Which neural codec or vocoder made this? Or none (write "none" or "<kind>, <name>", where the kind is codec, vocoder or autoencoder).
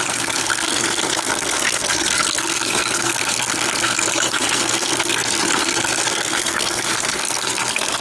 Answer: codec, SNAC